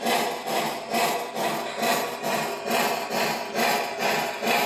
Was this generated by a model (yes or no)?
no